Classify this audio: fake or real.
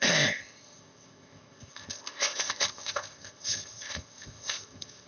fake